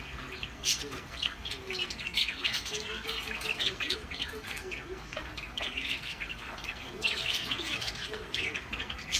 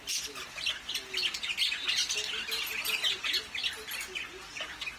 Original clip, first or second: second